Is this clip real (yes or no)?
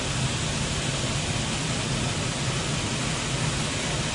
yes